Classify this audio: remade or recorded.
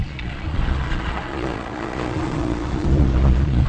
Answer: remade